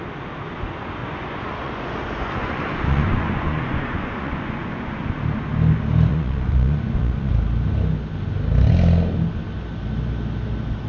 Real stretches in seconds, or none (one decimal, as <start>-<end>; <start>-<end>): 0.0-1.0; 5.0-6.1; 7.3-10.9